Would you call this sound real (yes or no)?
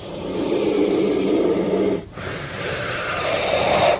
no